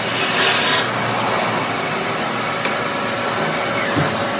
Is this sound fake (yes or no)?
no